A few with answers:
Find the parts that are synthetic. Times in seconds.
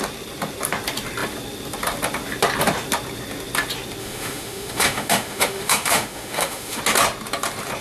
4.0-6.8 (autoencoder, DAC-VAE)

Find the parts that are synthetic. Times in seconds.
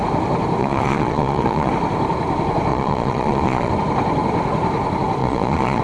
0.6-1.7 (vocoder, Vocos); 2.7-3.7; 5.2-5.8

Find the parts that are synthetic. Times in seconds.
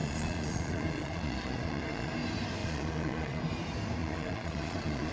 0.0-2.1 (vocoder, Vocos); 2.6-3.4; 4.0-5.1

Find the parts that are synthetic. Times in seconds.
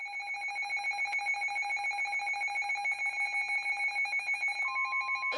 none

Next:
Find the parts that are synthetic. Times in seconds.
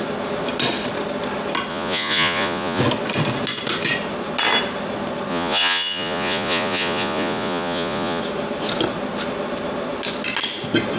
1.7-2.8 (vocoder, Vocos); 5.3-8.2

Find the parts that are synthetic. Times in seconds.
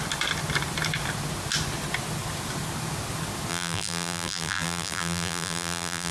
3.5-6.1 (vocoder, BigVGAN v2)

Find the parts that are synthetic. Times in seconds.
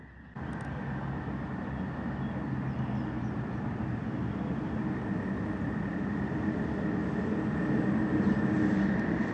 none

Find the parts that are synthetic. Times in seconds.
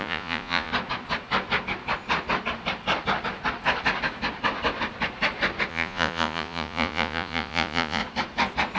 0.0-0.7 (vocoder, Vocos); 5.7-8.0